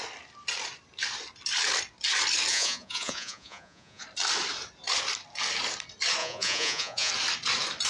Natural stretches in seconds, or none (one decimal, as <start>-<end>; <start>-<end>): 0.0-2.5; 4.0-6.2; 7.1-7.9